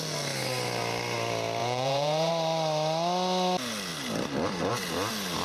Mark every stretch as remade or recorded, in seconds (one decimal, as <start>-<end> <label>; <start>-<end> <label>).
0.0-1.6 recorded; 1.6-2.3 remade; 2.3-5.4 recorded